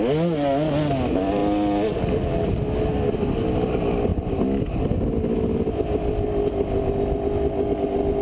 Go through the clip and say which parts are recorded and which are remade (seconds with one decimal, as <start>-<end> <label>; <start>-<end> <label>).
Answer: 0.0-8.2 recorded